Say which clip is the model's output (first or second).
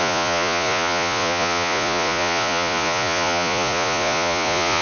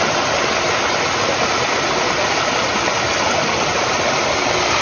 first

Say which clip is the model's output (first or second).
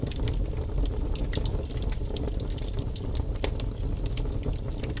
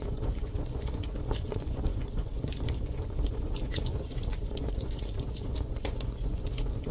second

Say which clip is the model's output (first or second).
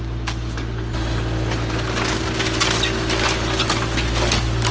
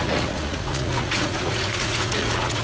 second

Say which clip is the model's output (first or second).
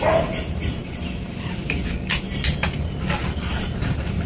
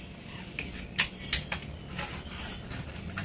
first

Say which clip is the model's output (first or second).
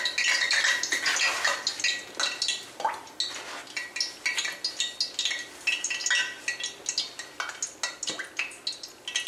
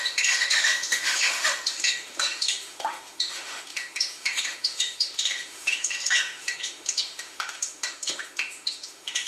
second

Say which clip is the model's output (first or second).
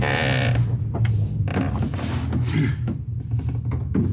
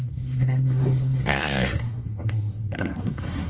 second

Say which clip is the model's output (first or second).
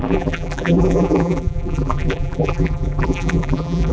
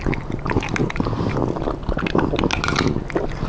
first